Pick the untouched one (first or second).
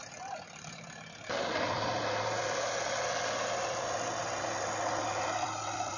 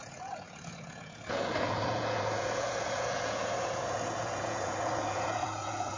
first